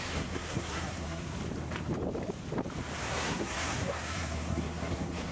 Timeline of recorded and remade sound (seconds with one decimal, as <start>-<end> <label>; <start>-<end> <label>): 0.0-1.4 remade; 1.4-3.0 recorded; 3.0-5.3 remade